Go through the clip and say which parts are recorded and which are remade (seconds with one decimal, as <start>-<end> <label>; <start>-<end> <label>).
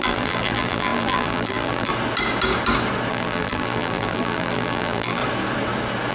0.0-1.9 remade; 1.9-3.1 recorded; 3.1-5.2 remade; 5.2-6.1 recorded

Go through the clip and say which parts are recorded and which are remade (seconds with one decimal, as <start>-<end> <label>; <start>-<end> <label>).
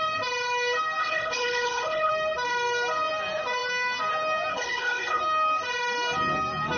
0.0-1.0 recorded; 1.0-2.1 remade; 2.1-4.5 recorded; 4.5-5.2 remade; 5.2-6.8 recorded